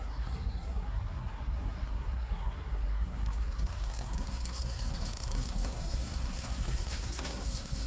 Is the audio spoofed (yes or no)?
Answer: yes